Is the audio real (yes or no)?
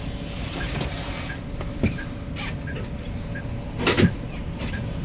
yes